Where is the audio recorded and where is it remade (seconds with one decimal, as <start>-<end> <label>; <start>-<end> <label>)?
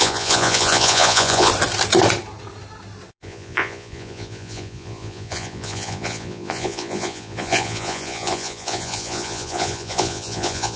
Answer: 0.0-1.5 remade; 1.5-3.1 recorded; 3.1-10.8 remade